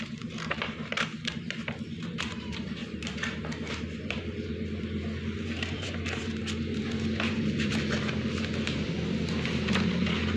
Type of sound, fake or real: fake